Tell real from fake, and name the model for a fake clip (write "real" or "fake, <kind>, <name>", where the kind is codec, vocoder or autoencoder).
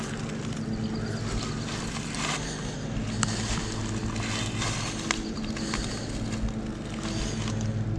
real